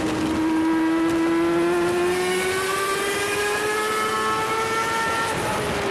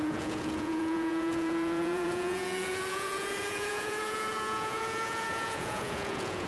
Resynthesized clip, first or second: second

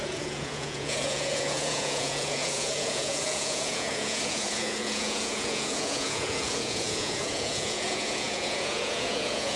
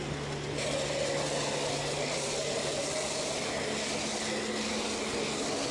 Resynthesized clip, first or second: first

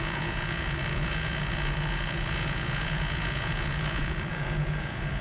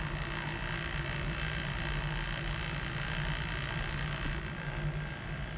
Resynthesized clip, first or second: first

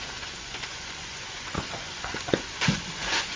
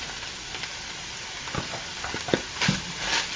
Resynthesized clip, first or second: first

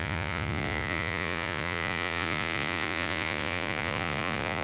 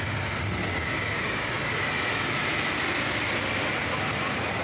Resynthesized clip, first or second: first